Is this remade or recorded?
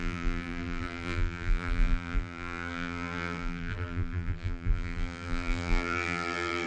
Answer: remade